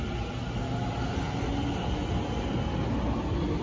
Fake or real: real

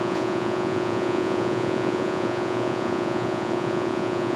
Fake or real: fake